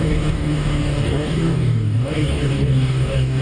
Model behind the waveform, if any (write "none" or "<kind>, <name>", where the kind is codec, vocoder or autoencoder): codec, DAC